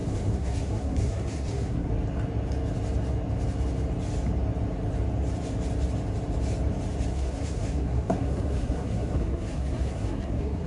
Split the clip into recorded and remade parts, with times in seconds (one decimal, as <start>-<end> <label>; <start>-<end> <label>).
0.0-1.9 remade; 1.9-7.1 recorded; 7.1-10.7 remade

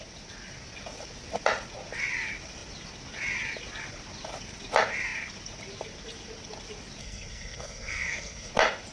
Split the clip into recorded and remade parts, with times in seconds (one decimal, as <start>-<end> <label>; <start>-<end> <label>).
0.0-7.0 recorded; 7.0-8.5 remade; 8.5-8.9 recorded

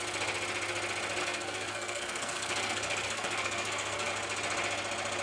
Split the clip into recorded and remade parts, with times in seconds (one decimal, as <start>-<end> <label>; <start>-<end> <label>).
0.0-1.2 recorded; 1.2-4.1 remade; 4.1-5.2 recorded